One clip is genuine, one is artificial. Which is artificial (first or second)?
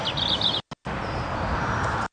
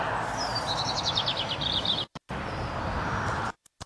second